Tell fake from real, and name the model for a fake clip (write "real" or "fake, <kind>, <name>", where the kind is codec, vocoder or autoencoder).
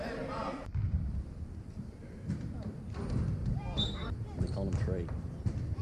fake, vocoder, BigVGAN v2